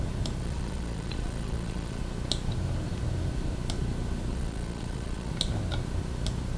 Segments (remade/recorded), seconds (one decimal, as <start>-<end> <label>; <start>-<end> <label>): 0.0-0.4 recorded; 0.4-2.0 remade; 2.0-4.3 recorded; 4.3-5.3 remade; 5.3-6.6 recorded